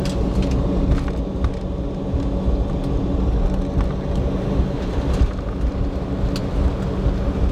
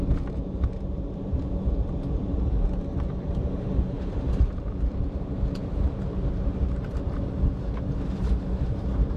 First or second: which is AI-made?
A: second